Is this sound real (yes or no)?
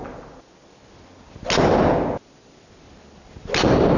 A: yes